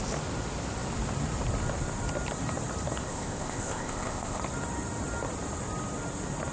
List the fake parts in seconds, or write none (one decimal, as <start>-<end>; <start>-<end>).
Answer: 3.0-4.4